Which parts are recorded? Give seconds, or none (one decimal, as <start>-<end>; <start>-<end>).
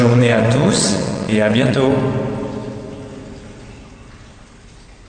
1.9-5.1